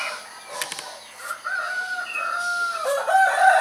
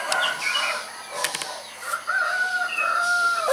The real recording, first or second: first